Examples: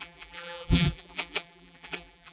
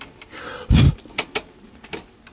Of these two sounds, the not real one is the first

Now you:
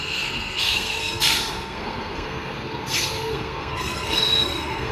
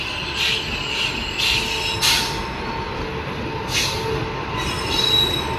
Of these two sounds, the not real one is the first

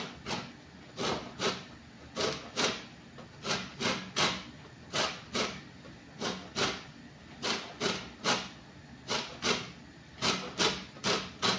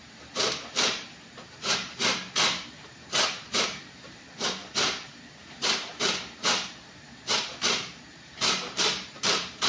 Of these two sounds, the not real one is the second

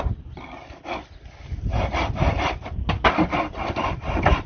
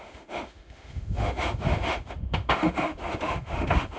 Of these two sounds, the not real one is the second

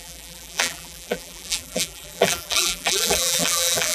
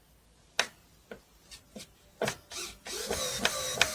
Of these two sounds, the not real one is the first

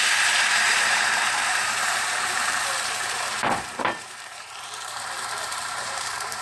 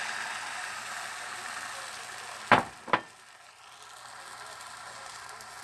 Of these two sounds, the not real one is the first